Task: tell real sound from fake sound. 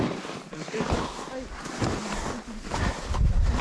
real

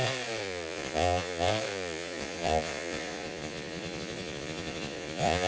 fake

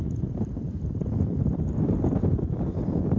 fake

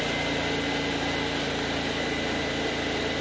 real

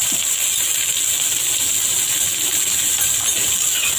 real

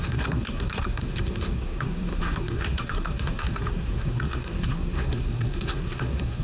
fake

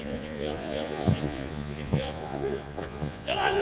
fake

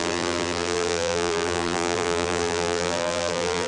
fake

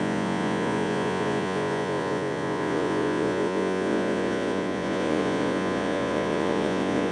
fake